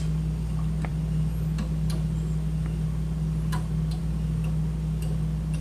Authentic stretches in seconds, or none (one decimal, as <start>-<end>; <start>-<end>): 0.0-5.6